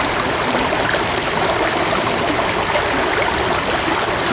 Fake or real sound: real